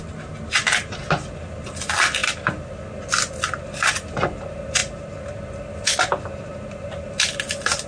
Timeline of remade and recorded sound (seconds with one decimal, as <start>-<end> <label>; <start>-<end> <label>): 0.0-7.9 recorded

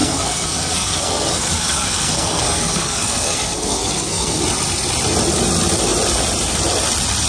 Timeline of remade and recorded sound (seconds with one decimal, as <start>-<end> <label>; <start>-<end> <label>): 0.0-4.4 remade; 4.4-7.3 recorded

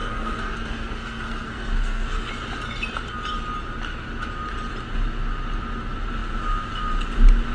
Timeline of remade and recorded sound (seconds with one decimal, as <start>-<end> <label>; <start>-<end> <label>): 0.0-2.3 remade; 2.3-7.5 recorded

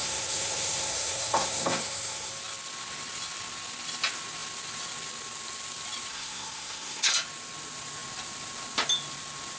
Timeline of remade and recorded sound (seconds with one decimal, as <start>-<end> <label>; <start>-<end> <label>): 0.0-2.3 remade; 2.3-6.1 recorded; 6.1-7.1 remade; 7.1-9.6 recorded